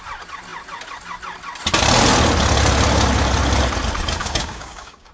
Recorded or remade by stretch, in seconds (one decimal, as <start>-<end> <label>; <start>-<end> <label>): 0.0-4.2 recorded; 4.2-5.1 remade